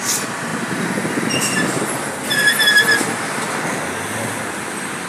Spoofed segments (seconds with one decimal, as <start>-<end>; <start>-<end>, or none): none